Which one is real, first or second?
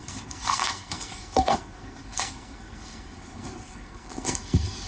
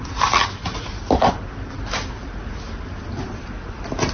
second